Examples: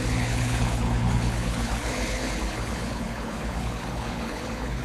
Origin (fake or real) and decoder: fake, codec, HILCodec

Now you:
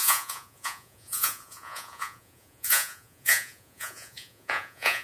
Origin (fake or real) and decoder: fake, vocoder, Vocos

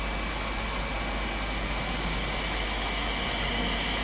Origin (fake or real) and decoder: real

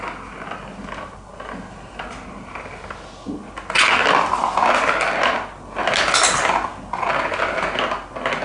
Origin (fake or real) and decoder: real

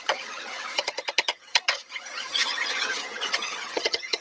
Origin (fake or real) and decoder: fake, vocoder, HiFi-GAN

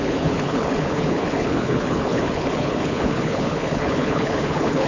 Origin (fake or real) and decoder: fake, codec, HILCodec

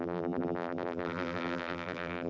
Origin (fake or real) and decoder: fake, vocoder, BigVGAN v2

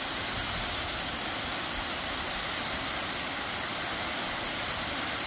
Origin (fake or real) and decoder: real